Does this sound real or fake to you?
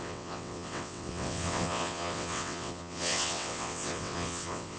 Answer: fake